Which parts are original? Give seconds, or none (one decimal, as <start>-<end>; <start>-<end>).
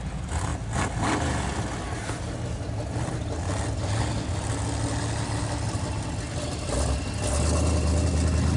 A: 0.0-8.6